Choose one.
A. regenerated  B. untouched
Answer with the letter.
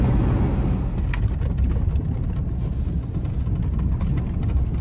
B